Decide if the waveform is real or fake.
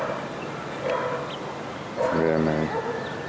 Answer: real